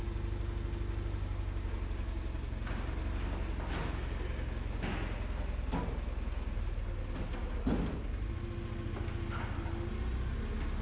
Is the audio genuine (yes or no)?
yes